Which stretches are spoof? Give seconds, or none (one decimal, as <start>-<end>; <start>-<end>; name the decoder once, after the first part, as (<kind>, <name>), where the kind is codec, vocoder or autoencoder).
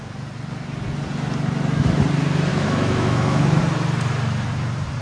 2.5-3.6 (autoencoder, DAC-VAE)